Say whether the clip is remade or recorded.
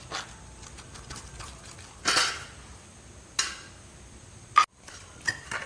recorded